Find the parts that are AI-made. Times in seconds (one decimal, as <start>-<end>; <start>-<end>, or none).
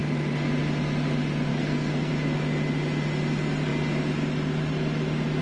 1.5-2.1